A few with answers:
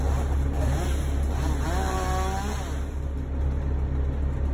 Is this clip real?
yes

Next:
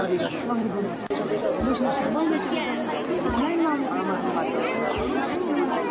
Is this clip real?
yes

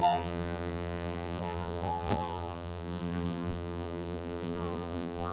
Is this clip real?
no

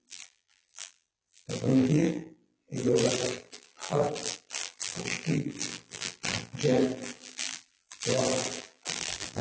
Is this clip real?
no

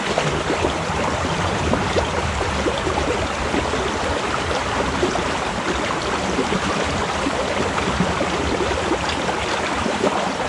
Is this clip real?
no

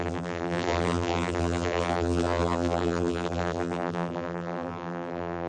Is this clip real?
no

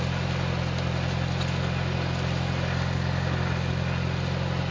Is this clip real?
yes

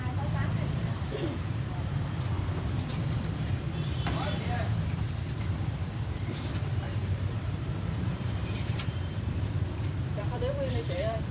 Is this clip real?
no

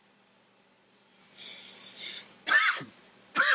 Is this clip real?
no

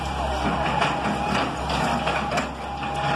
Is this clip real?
yes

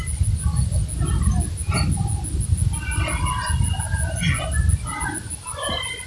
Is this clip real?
yes